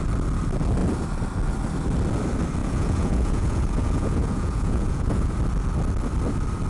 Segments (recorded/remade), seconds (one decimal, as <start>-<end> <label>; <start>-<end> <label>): 0.0-2.6 recorded; 2.6-5.3 remade; 5.3-6.7 recorded

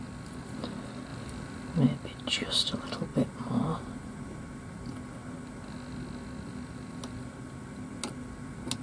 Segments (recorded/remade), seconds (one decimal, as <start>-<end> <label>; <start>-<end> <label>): 0.0-3.1 recorded; 3.1-4.1 remade; 4.1-8.8 recorded